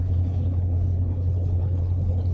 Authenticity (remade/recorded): remade